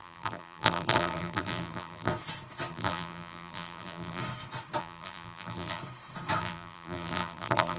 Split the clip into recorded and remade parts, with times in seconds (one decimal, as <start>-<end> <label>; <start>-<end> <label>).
0.0-2.1 remade; 2.1-2.7 recorded; 2.7-4.2 remade; 4.2-4.8 recorded; 4.8-5.8 remade; 5.8-6.4 recorded; 6.4-7.8 remade